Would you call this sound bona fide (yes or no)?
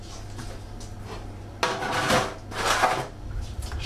yes